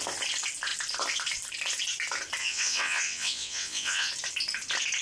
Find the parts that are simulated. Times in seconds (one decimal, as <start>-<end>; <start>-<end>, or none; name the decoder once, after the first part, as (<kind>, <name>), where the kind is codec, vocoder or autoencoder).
2.4-4.1 (vocoder, WaveNeXt)